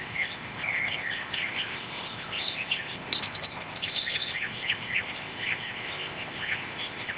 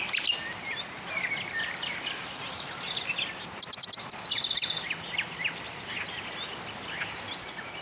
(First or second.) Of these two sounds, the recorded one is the second